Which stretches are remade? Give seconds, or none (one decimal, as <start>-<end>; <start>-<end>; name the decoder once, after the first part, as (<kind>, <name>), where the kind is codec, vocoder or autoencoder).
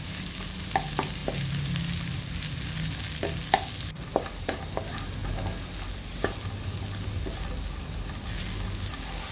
none